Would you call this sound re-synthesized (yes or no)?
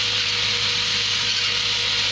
no